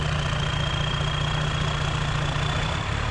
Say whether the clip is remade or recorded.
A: recorded